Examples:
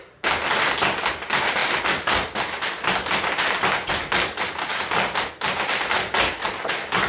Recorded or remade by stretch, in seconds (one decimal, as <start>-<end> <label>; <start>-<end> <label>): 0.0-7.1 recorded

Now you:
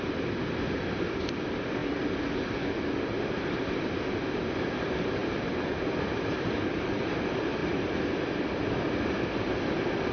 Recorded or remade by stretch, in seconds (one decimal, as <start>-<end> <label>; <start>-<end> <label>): 0.0-1.8 remade; 1.8-2.8 recorded; 2.8-5.2 remade; 5.2-6.0 recorded; 6.0-10.1 remade

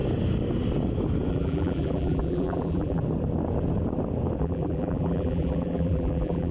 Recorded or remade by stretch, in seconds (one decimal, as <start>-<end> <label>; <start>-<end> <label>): 0.0-1.3 recorded; 1.3-3.0 remade; 3.0-4.4 recorded; 4.4-6.5 remade

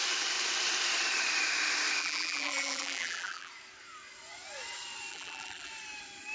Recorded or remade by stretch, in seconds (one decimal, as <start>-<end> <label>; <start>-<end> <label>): 0.0-2.0 recorded; 2.0-3.5 remade; 3.5-5.1 recorded; 5.1-5.7 remade; 5.7-6.3 recorded

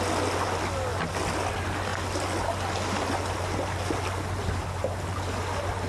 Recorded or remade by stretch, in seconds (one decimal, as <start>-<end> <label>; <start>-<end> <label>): 0.0-5.9 recorded